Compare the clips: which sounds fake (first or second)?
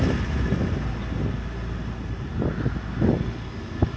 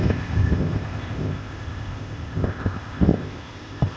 second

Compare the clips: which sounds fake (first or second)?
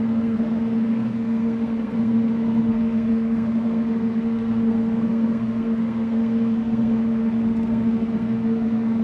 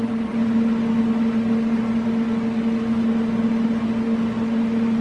first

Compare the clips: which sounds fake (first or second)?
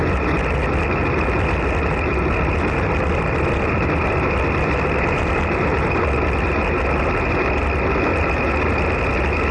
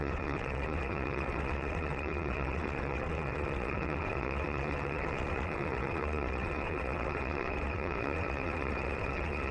second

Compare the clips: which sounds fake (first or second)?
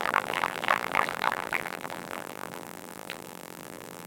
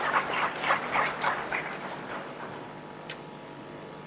first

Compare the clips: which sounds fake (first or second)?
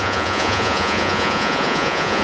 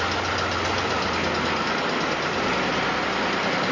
first